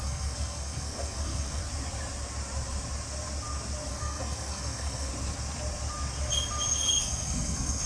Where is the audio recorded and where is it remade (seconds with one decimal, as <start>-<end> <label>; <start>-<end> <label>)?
0.0-1.6 remade; 1.6-3.9 recorded; 3.9-5.1 remade; 5.1-6.9 recorded; 6.9-7.9 remade

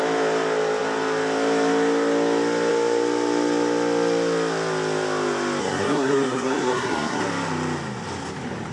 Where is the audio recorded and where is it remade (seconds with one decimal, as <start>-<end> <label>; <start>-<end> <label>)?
0.0-5.6 recorded; 5.6-7.2 remade; 7.2-8.7 recorded

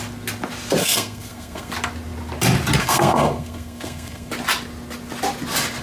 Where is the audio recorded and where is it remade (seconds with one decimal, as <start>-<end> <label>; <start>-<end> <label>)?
0.0-0.8 recorded; 0.8-1.7 remade; 1.7-2.8 recorded; 2.8-4.3 remade; 4.3-5.8 recorded

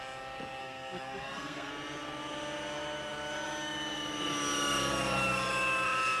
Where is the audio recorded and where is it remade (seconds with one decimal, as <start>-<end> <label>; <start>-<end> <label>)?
0.0-0.6 recorded; 0.6-1.7 remade; 1.7-6.2 recorded

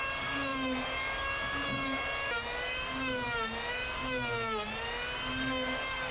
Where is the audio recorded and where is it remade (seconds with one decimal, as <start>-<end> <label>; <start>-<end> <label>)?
0.0-6.1 recorded

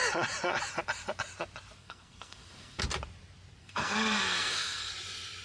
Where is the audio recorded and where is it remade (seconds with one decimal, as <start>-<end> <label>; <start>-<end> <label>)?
0.0-1.8 recorded; 1.8-2.8 remade; 2.8-3.6 recorded; 3.6-4.9 remade; 4.9-5.4 recorded

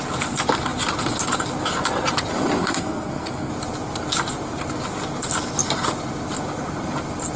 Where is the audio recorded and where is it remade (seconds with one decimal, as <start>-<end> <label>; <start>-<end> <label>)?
0.0-2.6 recorded; 2.6-3.5 remade; 3.5-7.4 recorded